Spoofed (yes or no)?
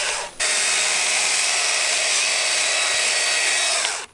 no